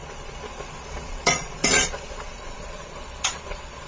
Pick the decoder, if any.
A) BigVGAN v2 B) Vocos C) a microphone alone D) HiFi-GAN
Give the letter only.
B